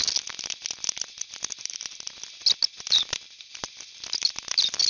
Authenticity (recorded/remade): recorded